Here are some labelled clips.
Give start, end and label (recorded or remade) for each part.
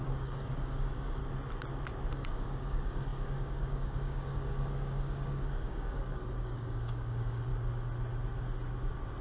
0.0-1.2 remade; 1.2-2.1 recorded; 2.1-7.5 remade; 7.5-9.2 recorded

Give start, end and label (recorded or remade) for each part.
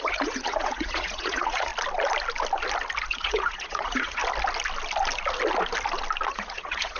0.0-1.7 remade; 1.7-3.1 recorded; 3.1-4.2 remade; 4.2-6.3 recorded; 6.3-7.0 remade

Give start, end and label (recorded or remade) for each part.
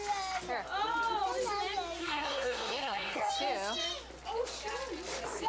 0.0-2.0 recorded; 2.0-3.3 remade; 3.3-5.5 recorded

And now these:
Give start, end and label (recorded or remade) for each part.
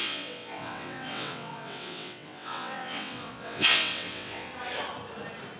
0.0-4.5 remade; 4.5-5.6 recorded